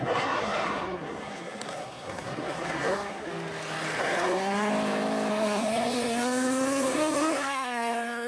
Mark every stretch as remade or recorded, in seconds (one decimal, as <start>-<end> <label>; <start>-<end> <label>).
0.0-3.3 remade; 3.3-4.0 recorded; 4.0-4.7 remade; 4.7-5.3 recorded; 5.3-8.3 remade